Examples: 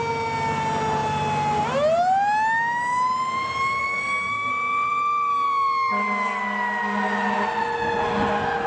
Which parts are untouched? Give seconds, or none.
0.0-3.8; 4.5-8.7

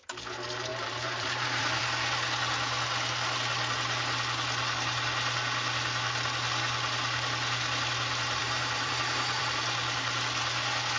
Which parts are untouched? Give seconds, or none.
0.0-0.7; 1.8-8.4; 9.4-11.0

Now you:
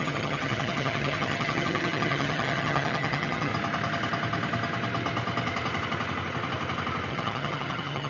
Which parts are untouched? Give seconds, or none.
3.5-7.1